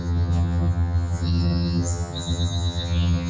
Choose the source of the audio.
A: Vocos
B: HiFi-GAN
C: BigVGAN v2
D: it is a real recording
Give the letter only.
B